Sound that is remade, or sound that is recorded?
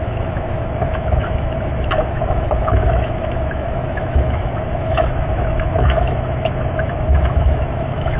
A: remade